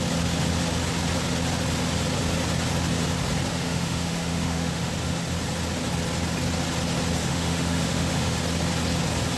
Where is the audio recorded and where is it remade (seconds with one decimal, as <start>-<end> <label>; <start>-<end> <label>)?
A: 0.0-3.5 recorded; 3.5-4.9 remade; 4.9-7.2 recorded; 7.2-8.4 remade; 8.4-9.4 recorded